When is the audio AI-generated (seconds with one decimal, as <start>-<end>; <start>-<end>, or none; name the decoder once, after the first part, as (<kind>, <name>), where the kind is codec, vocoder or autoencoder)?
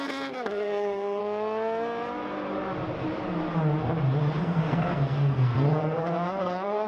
0.0-1.2 (codec, SNAC); 4.4-6.9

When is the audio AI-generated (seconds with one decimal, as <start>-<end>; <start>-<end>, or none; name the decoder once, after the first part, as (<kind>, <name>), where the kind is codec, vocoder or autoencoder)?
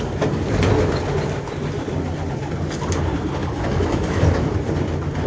3.4-4.2 (autoencoder, DAC-VAE)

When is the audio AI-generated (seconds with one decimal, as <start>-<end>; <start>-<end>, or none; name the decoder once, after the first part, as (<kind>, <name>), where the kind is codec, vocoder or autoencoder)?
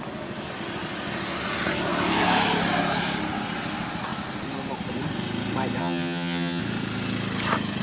5.8-6.6 (vocoder, HiFi-GAN)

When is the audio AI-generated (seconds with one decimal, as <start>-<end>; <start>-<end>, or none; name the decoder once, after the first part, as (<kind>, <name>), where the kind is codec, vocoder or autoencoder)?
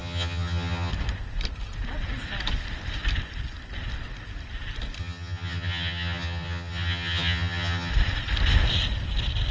0.0-0.9 (vocoder, HiFi-GAN); 5.0-7.9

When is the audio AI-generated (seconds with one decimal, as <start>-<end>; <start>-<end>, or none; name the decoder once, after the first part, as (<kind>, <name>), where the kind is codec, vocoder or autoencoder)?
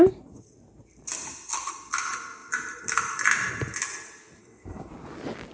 4.4-4.9 (codec, SNAC)